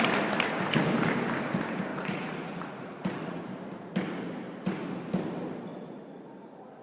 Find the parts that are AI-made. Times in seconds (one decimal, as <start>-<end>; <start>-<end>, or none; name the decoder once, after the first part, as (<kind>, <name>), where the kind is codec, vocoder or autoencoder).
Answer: 1.9-3.4 (vocoder, Vocos); 5.7-6.8